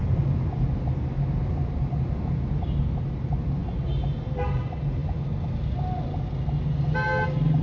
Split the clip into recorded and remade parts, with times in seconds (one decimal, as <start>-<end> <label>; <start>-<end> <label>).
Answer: 0.0-7.6 recorded